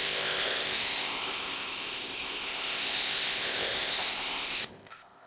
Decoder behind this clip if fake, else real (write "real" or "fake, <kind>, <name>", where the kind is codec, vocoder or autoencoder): fake, codec, ZipCodec